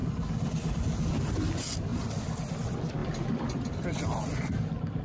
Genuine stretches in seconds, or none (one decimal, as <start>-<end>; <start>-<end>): 1.2-1.9; 2.6-3.0; 4.5-5.0